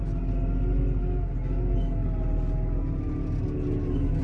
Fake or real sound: real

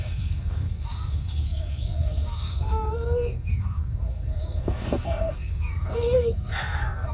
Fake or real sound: fake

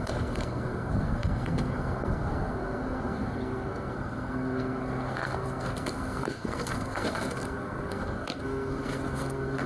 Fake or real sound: fake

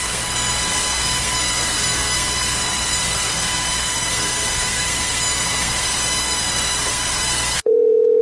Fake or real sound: fake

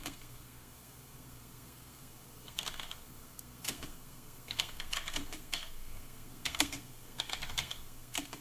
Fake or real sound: fake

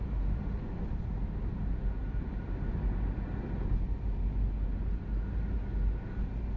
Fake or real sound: real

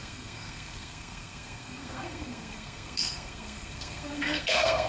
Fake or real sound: fake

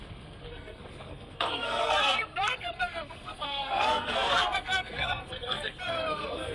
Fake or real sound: fake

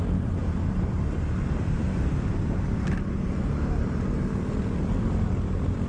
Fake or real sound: real